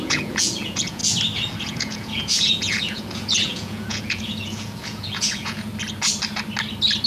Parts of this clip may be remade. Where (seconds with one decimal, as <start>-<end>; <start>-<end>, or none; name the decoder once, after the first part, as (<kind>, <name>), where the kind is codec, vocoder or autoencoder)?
0.0-1.0 (vocoder, Vocos); 1.6-5.7